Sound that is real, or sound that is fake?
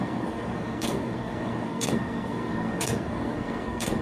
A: fake